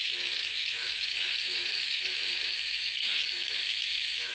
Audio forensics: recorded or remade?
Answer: remade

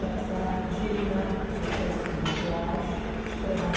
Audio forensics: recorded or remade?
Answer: recorded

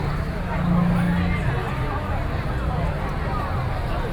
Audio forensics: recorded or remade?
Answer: recorded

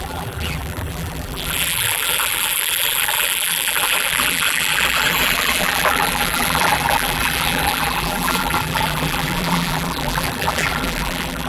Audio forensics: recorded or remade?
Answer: remade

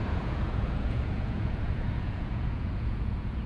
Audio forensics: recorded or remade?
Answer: remade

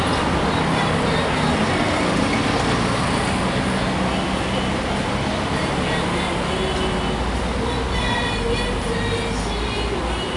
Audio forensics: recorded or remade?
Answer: recorded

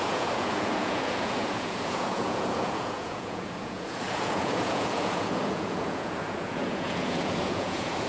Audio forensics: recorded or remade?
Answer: remade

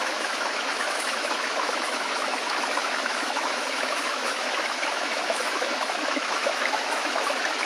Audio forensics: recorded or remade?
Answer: remade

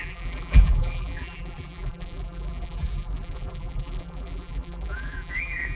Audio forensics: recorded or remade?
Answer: remade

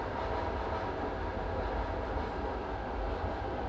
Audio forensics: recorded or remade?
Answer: recorded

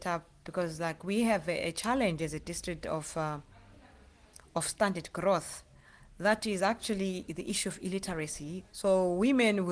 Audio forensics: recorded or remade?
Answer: recorded